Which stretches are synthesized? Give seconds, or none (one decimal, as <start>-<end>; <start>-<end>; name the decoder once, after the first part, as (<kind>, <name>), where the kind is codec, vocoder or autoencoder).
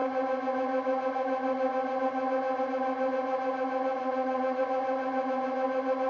4.0-4.6 (vocoder, Vocos)